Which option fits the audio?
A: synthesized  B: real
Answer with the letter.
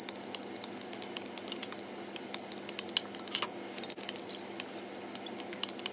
B